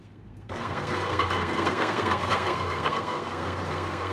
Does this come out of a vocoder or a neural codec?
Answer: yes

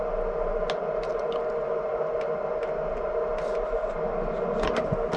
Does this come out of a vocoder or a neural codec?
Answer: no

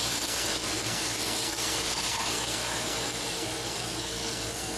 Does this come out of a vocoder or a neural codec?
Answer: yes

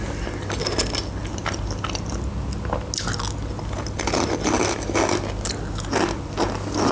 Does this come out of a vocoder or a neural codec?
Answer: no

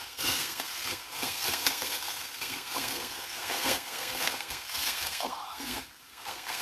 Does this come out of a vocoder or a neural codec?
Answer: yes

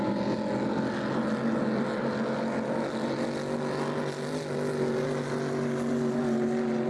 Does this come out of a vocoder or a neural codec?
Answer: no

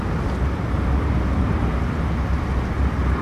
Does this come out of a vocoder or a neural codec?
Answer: no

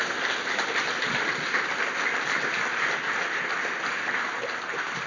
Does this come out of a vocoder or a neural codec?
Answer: no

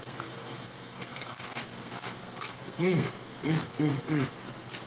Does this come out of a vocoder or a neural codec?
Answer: yes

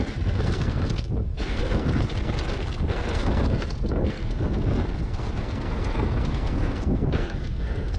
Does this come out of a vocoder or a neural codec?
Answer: yes